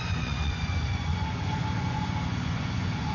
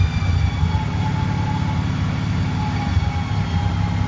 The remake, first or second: first